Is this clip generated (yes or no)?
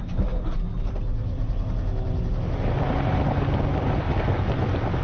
no